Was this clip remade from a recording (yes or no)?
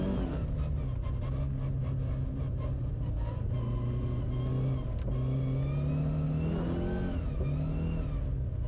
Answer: no